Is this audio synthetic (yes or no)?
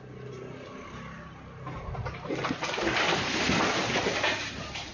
no